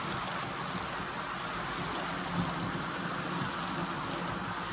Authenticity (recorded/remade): recorded